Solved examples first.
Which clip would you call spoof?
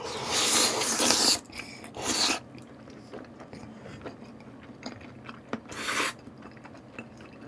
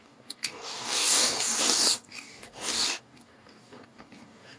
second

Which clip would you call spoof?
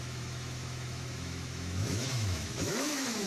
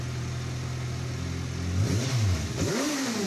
first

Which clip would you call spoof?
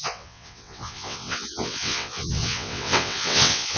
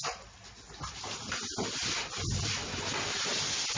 first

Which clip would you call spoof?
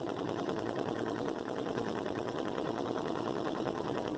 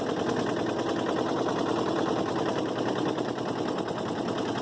first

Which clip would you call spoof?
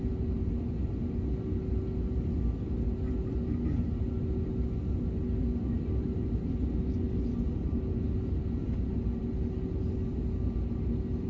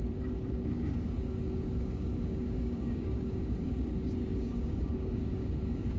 second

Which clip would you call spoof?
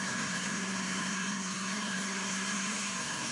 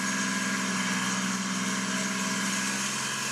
first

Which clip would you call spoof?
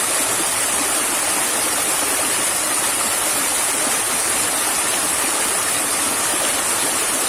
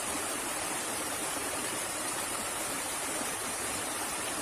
second